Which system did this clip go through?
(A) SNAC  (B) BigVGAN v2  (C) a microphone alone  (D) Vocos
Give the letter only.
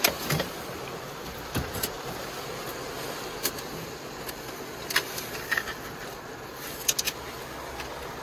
C